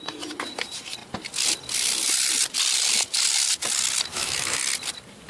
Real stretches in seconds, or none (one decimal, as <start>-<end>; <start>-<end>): 0.0-4.1; 4.6-5.3